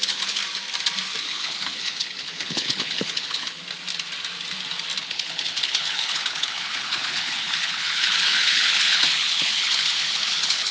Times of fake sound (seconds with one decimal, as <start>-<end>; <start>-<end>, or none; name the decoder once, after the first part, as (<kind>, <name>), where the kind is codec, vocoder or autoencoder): 0.0-0.4 (codec, HILCodec); 1.2-3.6; 5.0-10.7